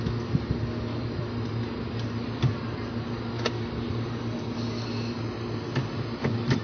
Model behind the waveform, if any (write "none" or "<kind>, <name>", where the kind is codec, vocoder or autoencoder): none